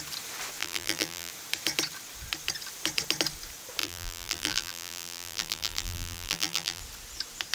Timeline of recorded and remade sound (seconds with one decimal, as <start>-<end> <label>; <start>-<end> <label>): 0.0-0.6 recorded; 0.6-1.3 remade; 1.3-3.8 recorded; 3.8-6.8 remade; 6.8-7.5 recorded